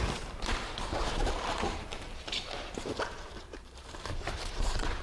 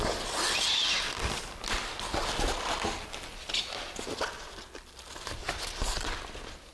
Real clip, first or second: second